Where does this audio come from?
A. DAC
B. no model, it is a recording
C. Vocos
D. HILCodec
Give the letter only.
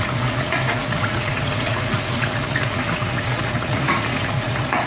C